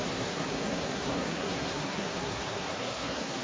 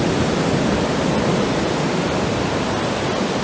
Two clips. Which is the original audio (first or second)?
second